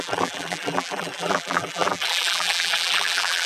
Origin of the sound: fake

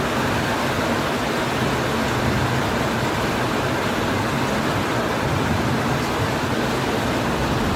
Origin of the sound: real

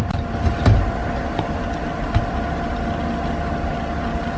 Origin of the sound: fake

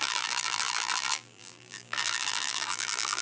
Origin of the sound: fake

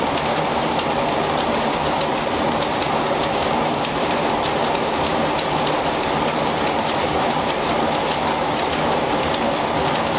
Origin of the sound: fake